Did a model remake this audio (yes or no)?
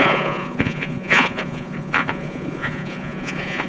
yes